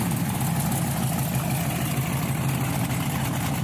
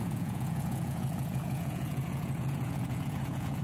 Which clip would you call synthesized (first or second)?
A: second